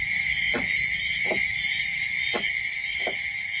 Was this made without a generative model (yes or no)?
yes